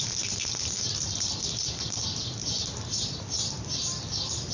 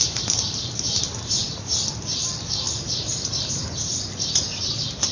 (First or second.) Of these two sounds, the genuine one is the first